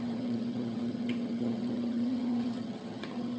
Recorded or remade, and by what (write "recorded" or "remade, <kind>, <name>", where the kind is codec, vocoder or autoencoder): remade, vocoder, HiFi-GAN